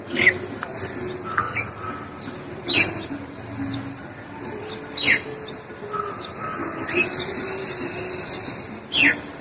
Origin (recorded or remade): recorded